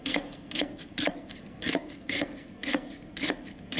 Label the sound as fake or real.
fake